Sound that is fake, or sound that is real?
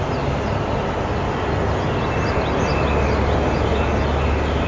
real